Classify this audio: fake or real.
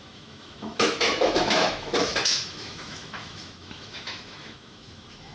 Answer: fake